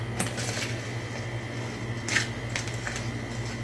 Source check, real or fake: real